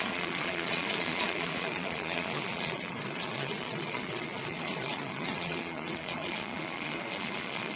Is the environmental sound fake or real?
fake